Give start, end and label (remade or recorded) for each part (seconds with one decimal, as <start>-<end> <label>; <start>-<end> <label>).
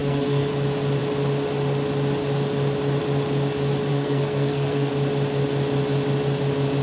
0.0-0.5 remade; 0.5-3.9 recorded; 3.9-4.9 remade; 4.9-6.8 recorded